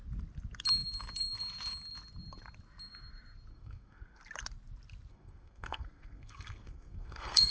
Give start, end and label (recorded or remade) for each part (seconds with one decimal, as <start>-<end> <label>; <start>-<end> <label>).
0.0-3.5 recorded; 3.5-4.2 remade; 4.2-5.1 recorded; 5.1-7.5 remade